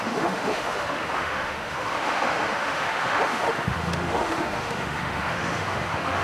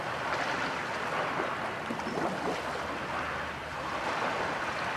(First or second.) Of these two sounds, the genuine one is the second